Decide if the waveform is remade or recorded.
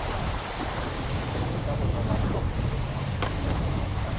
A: remade